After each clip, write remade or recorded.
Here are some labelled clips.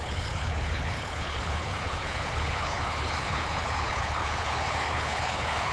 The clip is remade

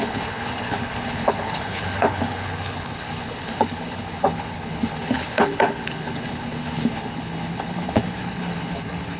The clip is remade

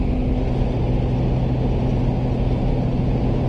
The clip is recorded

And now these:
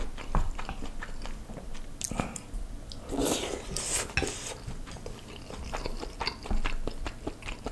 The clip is recorded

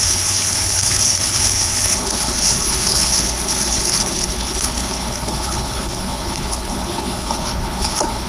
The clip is remade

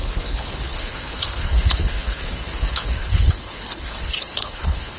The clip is remade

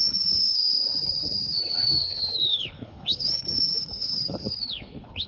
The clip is remade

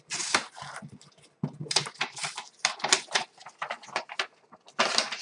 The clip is recorded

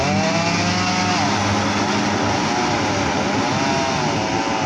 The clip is recorded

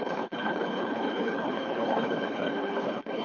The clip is remade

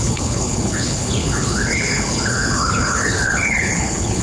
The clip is remade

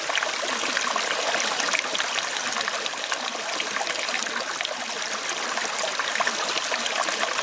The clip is recorded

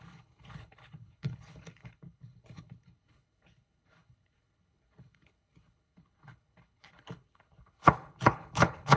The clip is remade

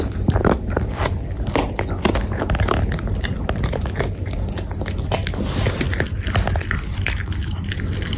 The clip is recorded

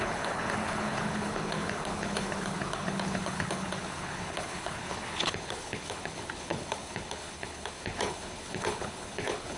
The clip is remade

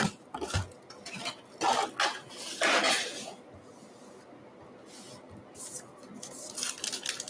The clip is recorded